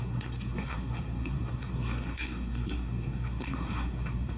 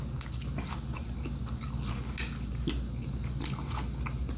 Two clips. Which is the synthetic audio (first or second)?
first